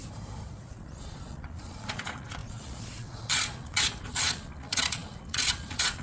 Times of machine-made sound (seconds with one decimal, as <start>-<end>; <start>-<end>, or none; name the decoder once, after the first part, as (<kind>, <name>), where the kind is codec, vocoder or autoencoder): 0.7-6.0 (vocoder, Vocos)